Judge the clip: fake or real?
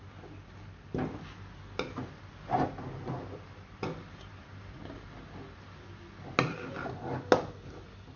real